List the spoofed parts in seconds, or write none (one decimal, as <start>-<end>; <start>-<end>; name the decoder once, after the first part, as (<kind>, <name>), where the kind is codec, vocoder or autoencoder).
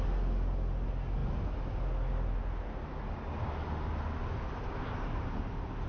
none